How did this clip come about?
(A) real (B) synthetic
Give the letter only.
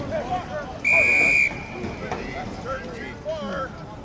A